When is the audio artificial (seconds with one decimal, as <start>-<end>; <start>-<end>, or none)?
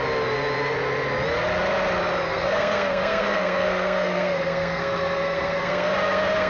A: 2.3-6.5